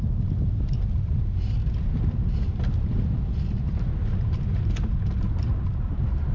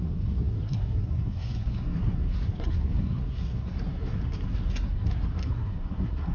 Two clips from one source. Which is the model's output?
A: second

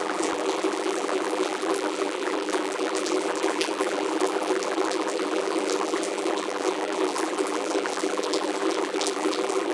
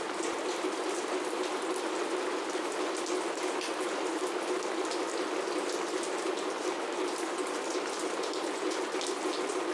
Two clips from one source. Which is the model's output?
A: first